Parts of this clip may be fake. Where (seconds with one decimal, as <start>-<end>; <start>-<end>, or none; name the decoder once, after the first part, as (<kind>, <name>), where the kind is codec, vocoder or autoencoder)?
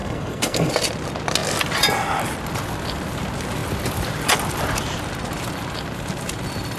0.0-0.7 (codec, SNAC)